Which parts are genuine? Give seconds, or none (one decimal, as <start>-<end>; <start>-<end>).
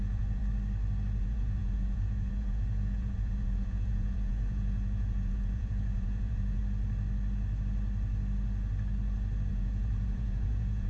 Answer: 0.4-1.2; 6.6-9.5